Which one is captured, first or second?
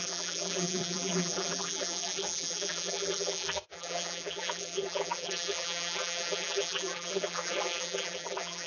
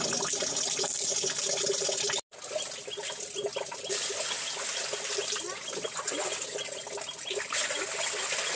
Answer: second